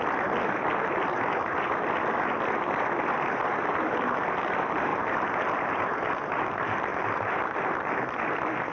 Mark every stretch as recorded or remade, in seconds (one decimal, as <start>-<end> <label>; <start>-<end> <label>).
0.0-4.9 recorded; 4.9-5.8 remade; 5.8-6.9 recorded; 6.9-7.4 remade; 7.4-8.7 recorded